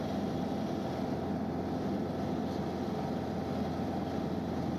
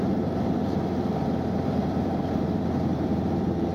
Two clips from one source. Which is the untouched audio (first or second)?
first